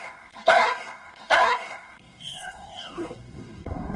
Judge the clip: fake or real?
fake